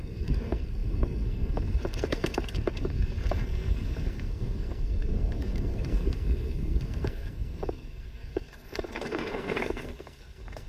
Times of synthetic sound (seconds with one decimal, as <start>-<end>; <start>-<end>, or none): 0.0-10.7